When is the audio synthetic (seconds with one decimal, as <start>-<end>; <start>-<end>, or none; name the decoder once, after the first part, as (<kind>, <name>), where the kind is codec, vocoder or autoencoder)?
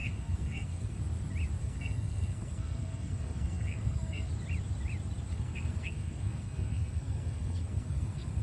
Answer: 0.0-1.0 (codec, SNAC); 1.6-4.3; 5.3-8.4